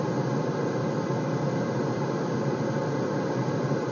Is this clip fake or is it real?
real